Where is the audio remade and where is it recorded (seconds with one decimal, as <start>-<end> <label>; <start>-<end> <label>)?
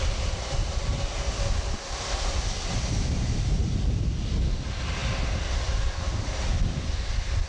0.0-7.5 recorded